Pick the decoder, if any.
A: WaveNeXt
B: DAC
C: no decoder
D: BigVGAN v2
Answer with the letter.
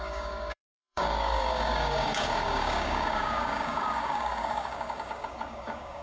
B